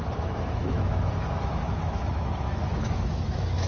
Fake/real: fake